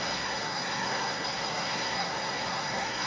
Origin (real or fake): fake